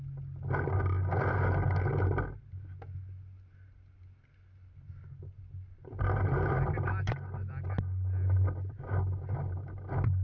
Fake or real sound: real